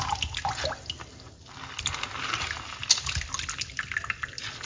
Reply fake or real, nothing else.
real